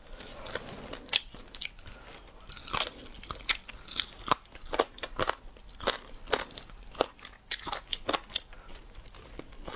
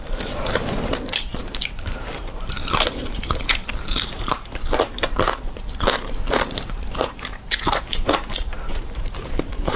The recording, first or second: first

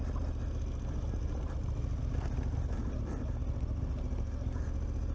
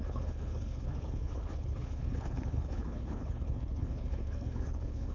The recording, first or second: first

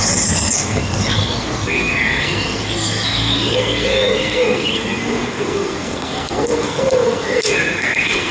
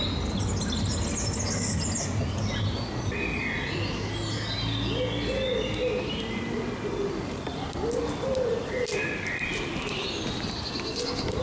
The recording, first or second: second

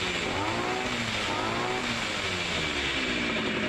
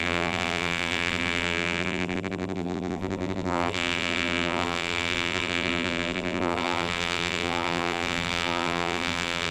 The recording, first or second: first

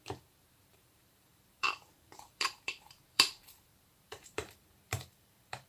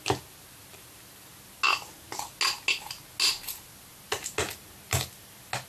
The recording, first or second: second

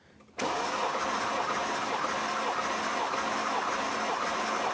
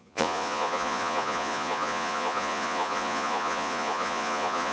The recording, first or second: first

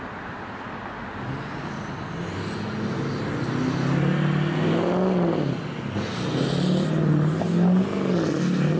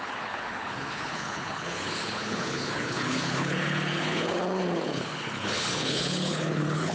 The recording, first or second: first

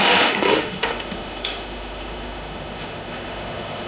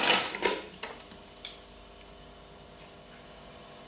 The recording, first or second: second